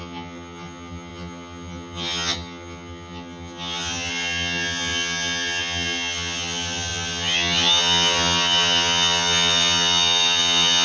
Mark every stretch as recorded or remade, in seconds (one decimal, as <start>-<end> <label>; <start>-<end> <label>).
0.0-10.8 remade